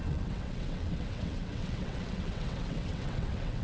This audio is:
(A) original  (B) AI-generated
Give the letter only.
B